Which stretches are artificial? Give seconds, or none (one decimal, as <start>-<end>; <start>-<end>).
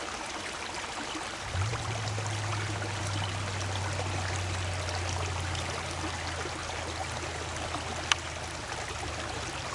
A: none